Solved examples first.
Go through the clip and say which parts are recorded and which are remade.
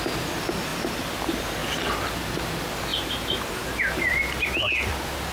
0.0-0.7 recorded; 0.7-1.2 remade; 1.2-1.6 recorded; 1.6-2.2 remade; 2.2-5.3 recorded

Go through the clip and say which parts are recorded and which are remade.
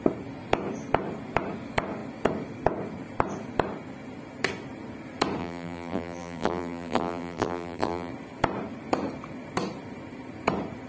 0.0-5.4 recorded; 5.4-8.1 remade; 8.1-10.9 recorded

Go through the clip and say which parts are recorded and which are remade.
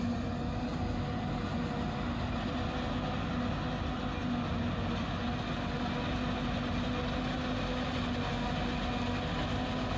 0.0-10.0 recorded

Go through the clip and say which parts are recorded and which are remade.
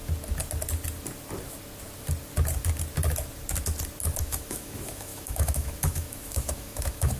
0.0-4.2 recorded; 4.2-7.2 remade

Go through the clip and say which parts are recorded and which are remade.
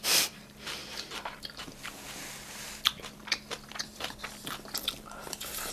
0.0-5.7 remade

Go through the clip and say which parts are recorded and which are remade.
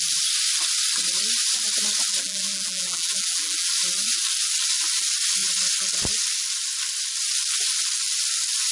0.0-2.2 recorded; 2.2-3.7 remade; 3.7-8.7 recorded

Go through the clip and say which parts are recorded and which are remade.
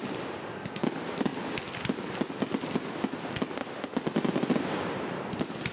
0.0-1.3 remade; 1.3-4.7 recorded; 4.7-5.7 remade